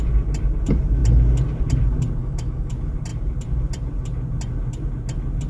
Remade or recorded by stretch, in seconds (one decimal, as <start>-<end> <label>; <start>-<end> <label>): 0.0-2.2 recorded; 2.2-2.7 remade; 2.7-5.5 recorded